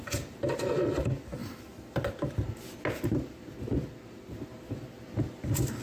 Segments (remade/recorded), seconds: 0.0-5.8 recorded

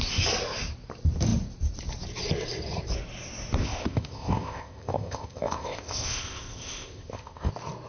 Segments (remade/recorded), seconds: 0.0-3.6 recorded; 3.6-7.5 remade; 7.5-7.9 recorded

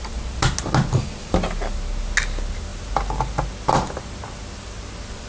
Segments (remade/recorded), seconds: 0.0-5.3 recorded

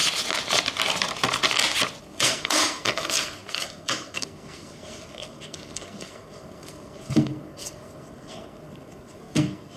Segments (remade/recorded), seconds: 0.0-2.0 recorded; 2.0-9.8 remade